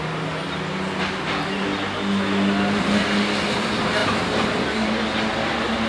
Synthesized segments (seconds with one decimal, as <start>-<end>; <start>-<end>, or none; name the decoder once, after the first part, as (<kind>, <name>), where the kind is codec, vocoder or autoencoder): none